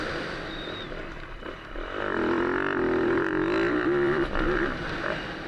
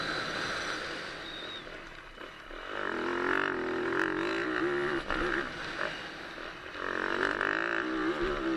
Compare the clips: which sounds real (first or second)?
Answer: second